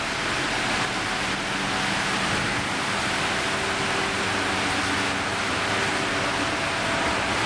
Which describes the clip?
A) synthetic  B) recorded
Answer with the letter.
B